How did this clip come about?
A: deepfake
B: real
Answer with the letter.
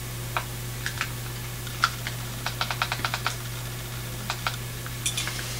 B